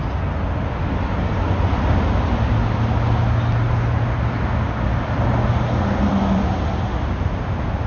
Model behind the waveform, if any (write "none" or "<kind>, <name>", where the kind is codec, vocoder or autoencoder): none